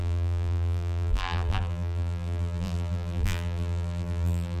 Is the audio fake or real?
fake